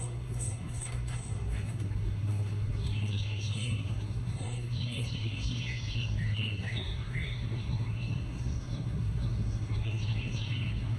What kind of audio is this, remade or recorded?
remade